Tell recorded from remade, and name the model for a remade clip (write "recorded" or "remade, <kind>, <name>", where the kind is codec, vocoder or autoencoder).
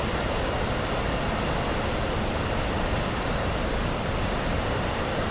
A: recorded